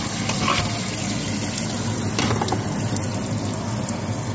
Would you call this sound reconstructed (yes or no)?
no